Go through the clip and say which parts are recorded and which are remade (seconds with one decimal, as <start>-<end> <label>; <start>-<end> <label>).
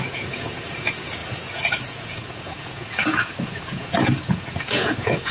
0.0-5.3 remade